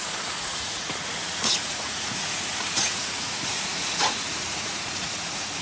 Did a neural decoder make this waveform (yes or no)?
yes